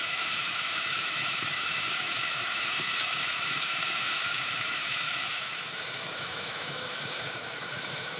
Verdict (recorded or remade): remade